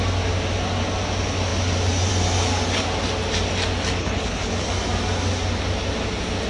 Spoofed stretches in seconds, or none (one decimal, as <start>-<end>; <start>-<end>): 4.0-4.5